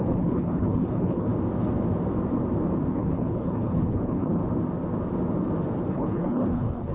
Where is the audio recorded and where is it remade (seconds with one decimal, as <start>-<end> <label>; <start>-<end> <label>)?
0.0-1.3 remade; 1.3-2.9 recorded; 2.9-4.4 remade; 4.4-5.9 recorded; 5.9-6.9 remade